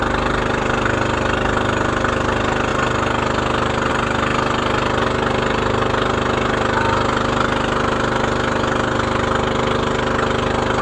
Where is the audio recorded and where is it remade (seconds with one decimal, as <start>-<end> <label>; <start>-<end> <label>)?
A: 0.0-10.8 recorded